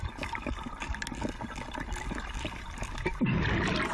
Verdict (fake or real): real